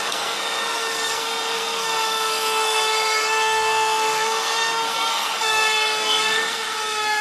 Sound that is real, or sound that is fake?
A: fake